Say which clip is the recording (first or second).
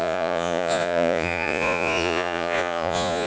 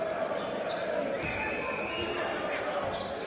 second